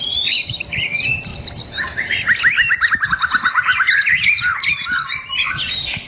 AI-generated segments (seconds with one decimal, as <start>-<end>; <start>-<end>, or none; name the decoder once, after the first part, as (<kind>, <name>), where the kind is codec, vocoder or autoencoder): 0.0-1.3 (vocoder, BigVGAN v2); 2.1-3.7; 4.6-6.1